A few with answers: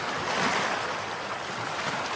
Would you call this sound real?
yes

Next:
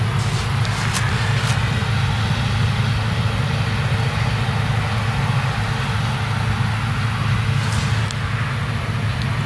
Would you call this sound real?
yes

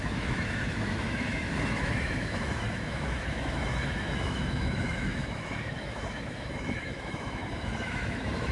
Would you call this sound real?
no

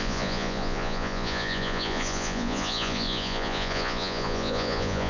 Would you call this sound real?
no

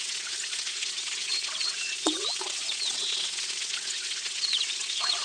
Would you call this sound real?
no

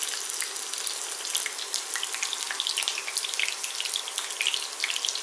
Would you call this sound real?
yes